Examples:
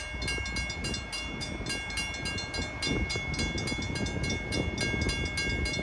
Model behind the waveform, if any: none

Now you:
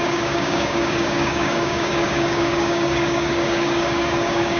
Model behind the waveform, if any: codec, DAC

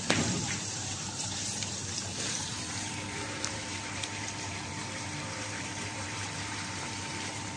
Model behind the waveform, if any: vocoder, BigVGAN v2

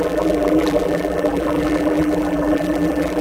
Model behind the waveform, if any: vocoder, BigVGAN v2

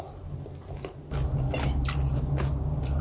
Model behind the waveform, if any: none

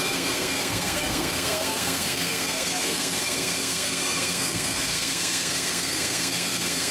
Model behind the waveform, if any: codec, SNAC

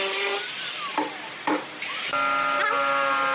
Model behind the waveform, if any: none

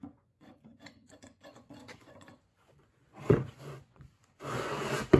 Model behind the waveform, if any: vocoder, Vocos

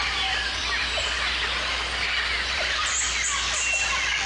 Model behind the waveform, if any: none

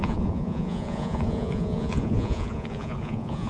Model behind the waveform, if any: vocoder, Vocos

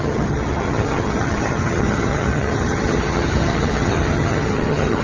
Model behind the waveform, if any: vocoder, HiFi-GAN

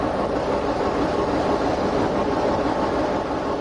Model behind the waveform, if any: none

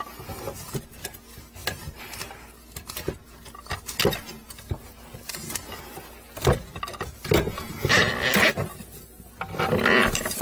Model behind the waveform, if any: none